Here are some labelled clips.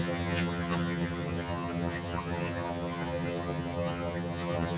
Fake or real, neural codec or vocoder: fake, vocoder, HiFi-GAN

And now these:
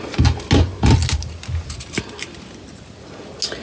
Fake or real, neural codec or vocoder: real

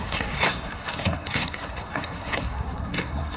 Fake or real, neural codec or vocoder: fake, codec, SNAC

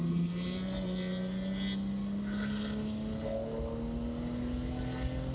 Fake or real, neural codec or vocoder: real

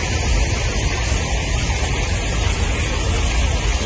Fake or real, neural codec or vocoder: real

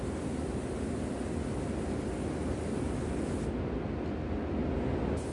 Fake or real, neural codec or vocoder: real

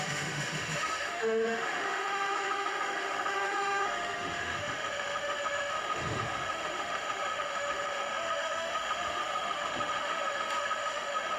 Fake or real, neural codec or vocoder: fake, autoencoder, DAC-VAE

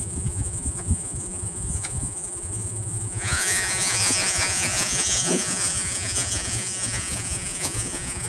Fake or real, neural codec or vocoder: fake, vocoder, Vocos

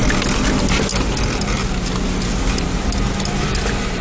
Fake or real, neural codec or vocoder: real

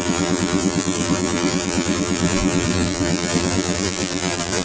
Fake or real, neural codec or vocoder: fake, vocoder, BigVGAN v2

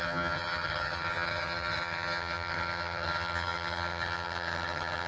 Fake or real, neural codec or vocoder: fake, vocoder, HiFi-GAN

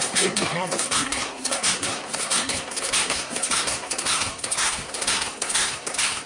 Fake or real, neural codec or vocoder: fake, codec, SNAC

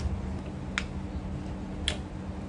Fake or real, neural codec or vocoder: real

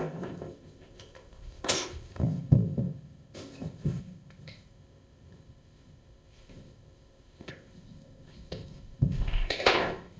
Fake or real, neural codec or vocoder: fake, codec, ZipCodec